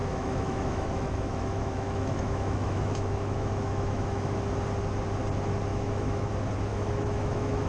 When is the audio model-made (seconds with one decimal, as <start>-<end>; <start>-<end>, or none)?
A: 0.0-4.4; 5.7-6.3; 6.7-7.7